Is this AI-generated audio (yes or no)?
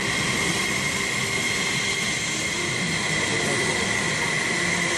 no